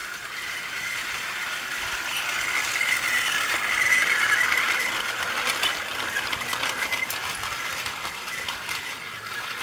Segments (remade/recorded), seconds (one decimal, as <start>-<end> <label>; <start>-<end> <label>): 0.0-2.0 remade; 2.0-9.6 recorded

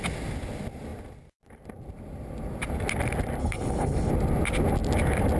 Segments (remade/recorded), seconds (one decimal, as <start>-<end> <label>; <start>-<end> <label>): 0.0-3.4 recorded; 3.4-4.1 remade; 4.1-5.4 recorded

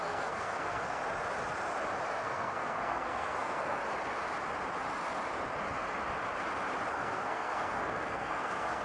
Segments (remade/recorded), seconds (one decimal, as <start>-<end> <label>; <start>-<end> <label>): 0.0-1.0 remade; 1.0-2.1 recorded; 2.1-3.8 remade; 3.8-6.9 recorded; 6.9-8.8 remade

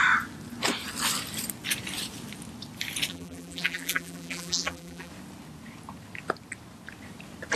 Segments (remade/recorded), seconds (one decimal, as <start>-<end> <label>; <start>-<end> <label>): 0.0-3.1 recorded; 3.1-5.1 remade; 5.1-7.6 recorded

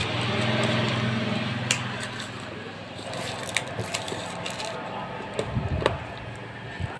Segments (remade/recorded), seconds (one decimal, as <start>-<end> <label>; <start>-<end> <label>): 0.0-7.0 recorded

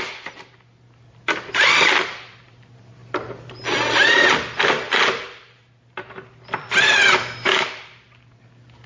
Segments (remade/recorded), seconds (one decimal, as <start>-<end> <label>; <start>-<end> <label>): 0.0-8.9 recorded